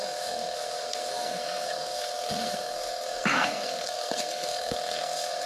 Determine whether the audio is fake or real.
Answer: fake